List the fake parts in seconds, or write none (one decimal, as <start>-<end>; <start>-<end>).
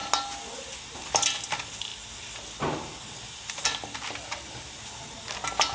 none